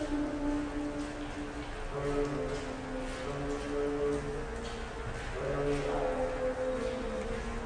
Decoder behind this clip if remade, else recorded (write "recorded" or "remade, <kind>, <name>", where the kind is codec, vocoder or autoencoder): recorded